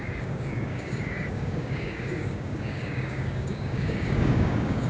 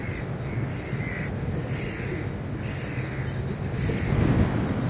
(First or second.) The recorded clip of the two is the second